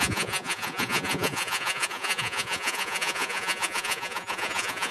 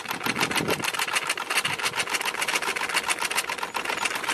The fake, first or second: first